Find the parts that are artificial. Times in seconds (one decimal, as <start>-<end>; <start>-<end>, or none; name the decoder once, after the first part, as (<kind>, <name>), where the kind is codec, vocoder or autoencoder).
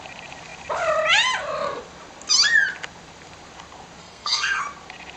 4.0-4.6 (codec, SNAC)